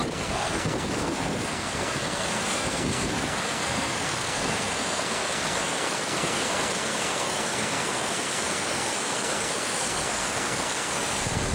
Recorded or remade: remade